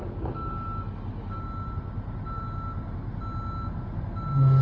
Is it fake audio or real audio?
real